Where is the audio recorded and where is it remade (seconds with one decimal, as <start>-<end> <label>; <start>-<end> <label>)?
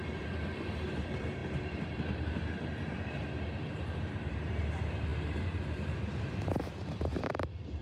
0.0-7.8 remade